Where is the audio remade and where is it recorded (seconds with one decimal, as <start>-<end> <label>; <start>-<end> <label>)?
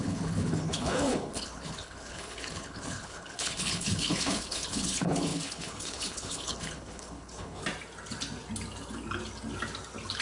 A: 0.0-7.6 remade; 7.6-10.2 recorded